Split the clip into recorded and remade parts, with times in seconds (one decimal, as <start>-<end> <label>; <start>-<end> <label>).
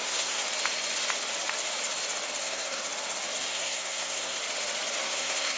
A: 0.0-0.4 remade; 0.4-2.4 recorded; 2.4-2.8 remade; 2.8-3.5 recorded; 3.5-4.4 remade; 4.4-5.0 recorded; 5.0-5.6 remade